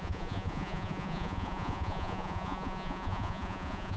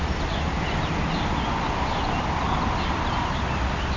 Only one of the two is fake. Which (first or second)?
first